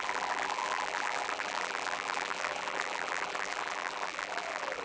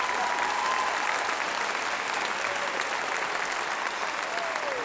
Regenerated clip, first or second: first